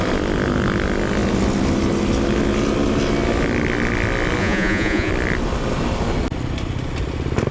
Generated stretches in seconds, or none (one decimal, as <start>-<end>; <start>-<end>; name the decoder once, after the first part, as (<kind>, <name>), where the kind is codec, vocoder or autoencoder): 4.4-5.1 (vocoder, Vocos)